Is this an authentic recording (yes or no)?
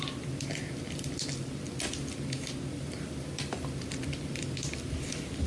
yes